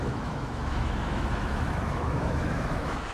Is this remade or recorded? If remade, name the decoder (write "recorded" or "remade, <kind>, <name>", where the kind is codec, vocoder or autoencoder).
remade, autoencoder, DAC-VAE